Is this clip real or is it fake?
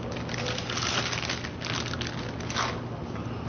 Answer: real